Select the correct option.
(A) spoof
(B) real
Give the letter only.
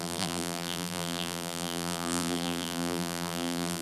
A